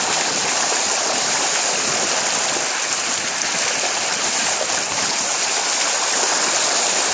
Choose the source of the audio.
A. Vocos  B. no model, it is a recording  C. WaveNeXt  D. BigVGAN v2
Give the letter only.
D